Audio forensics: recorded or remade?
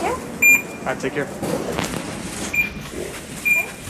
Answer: recorded